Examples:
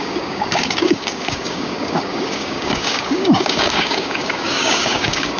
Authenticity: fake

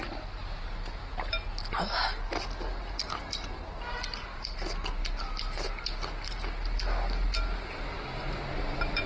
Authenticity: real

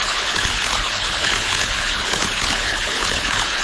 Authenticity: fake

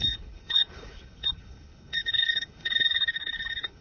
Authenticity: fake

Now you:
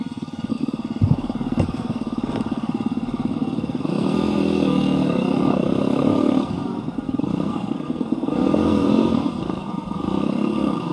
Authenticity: fake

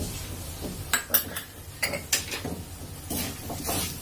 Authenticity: real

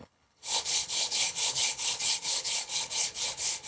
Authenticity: fake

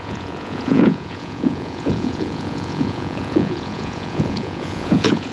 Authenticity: fake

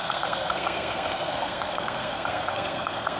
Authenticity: fake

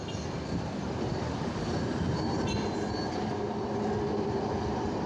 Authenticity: real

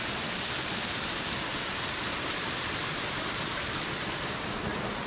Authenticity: real